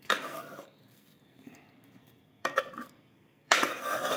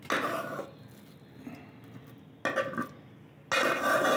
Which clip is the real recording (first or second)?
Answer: second